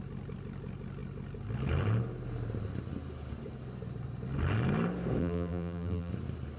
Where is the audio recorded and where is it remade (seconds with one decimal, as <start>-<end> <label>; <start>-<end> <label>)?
0.0-5.2 recorded; 5.2-6.1 remade; 6.1-6.6 recorded